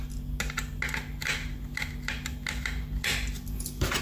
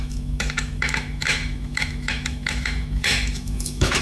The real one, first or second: first